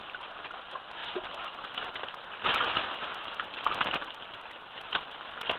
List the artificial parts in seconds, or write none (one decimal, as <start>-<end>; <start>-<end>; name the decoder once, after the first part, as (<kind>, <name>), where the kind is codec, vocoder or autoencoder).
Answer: none